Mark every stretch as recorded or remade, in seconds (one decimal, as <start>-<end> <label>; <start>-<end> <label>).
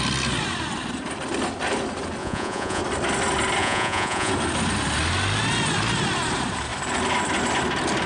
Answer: 0.0-2.2 recorded; 2.2-2.8 remade; 2.8-3.6 recorded; 3.6-4.3 remade; 4.3-8.1 recorded